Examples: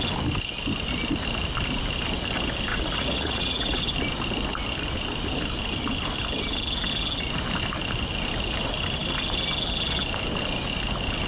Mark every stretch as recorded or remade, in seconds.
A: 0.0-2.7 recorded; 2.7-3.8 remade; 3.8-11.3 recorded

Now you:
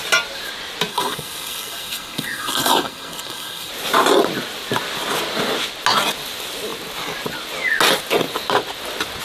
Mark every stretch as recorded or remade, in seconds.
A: 0.0-0.9 recorded; 0.9-3.7 remade; 3.7-9.2 recorded

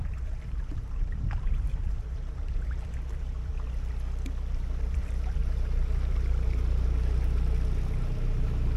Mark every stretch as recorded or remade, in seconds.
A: 0.0-3.5 remade; 3.5-4.9 recorded; 4.9-5.4 remade; 5.4-8.8 recorded